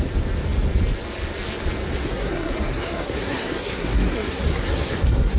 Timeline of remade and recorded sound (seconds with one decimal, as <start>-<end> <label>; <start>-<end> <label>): 0.0-2.0 recorded; 2.0-5.4 remade